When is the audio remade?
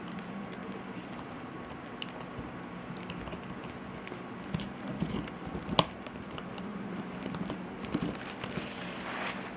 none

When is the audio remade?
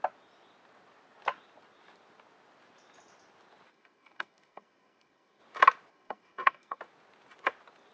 3.7-5.4 (codec, SNAC); 5.9-6.8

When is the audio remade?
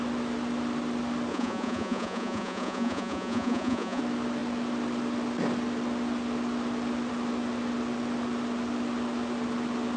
1.3-4.0 (vocoder, Vocos)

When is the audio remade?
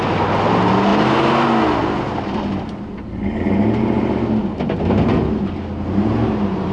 none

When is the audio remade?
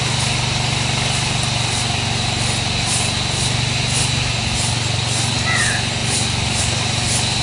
none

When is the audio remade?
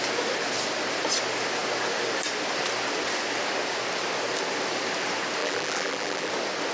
5.4-6.3 (vocoder, BigVGAN v2)